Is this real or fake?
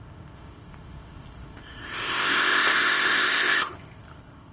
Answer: fake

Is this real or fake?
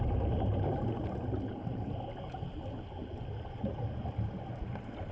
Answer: real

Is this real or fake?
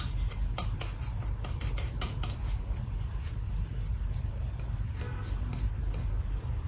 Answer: real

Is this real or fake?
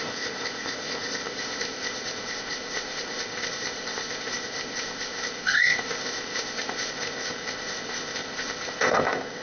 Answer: fake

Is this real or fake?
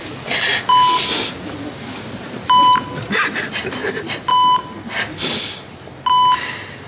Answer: real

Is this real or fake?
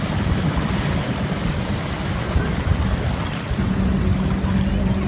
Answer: real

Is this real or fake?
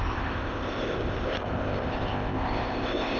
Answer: fake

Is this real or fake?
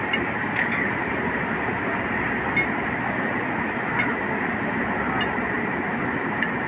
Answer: real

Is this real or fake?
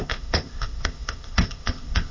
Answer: fake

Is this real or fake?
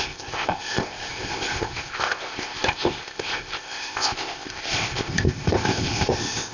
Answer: fake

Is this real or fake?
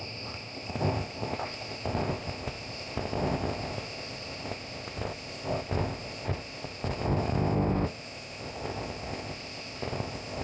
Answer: fake